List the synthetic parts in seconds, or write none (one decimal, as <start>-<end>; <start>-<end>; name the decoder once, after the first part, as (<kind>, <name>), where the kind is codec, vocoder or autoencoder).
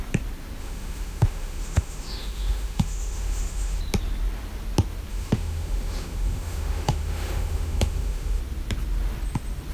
0.6-3.8 (autoencoder, DAC-VAE); 5.1-8.4